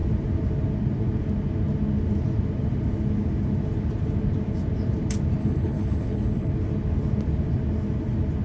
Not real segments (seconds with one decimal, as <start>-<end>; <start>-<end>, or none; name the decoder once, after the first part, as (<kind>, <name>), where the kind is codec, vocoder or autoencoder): 5.4-6.5 (codec, HILCodec)